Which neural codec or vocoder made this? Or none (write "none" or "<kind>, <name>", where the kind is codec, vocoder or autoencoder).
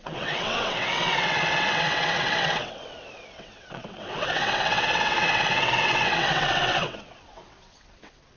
vocoder, WaveNeXt